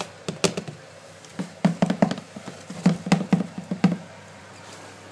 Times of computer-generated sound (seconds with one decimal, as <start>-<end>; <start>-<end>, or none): none